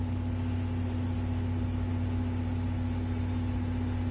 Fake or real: real